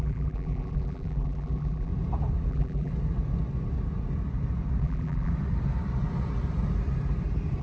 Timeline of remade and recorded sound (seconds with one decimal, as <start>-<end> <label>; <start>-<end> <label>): 0.0-1.9 remade; 1.9-2.5 recorded; 2.5-2.9 remade; 2.9-4.8 recorded; 4.8-5.3 remade; 5.3-7.6 recorded